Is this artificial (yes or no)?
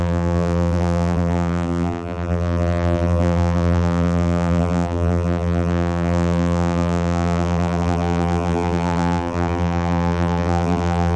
yes